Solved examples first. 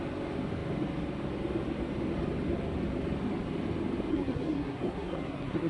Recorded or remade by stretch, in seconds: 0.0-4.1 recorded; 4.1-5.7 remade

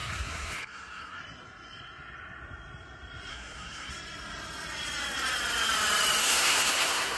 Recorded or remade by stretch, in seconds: 0.0-1.2 remade; 1.2-3.3 recorded; 3.3-3.9 remade; 3.9-6.2 recorded; 6.2-7.2 remade